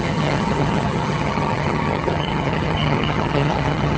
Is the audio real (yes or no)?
no